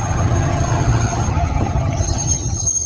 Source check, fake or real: fake